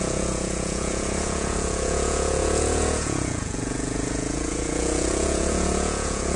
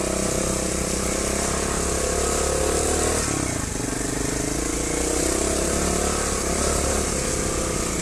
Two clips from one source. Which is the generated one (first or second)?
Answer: first